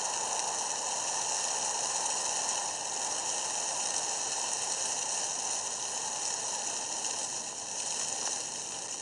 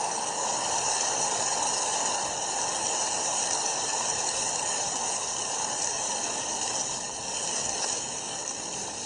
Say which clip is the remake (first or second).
second